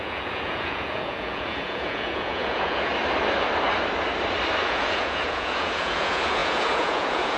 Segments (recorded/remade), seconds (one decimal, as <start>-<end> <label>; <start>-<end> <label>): 0.0-2.9 remade; 2.9-4.6 recorded; 4.6-7.4 remade

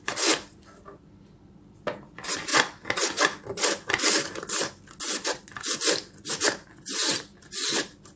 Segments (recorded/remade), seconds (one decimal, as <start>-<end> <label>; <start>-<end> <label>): 0.0-8.2 recorded

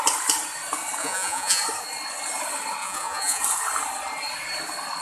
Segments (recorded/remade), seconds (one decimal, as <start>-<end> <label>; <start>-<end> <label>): 0.0-1.0 recorded; 1.0-1.6 remade; 1.6-2.8 recorded; 2.8-3.4 remade; 3.4-5.0 recorded

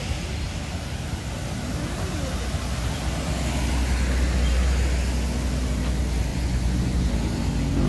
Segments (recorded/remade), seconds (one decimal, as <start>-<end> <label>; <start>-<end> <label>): 0.0-6.3 recorded; 6.3-7.1 remade; 7.1-7.9 recorded

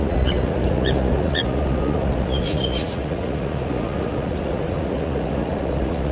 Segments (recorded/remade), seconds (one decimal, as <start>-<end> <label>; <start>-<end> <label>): 0.0-6.1 remade

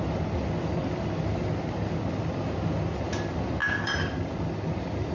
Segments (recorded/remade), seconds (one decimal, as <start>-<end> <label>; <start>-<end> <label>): 0.0-5.1 recorded

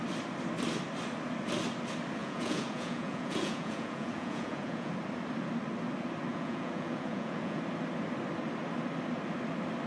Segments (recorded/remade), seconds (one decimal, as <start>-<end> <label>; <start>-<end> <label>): 0.0-2.2 recorded; 2.2-4.9 remade; 4.9-6.3 recorded; 6.3-7.6 remade; 7.6-9.9 recorded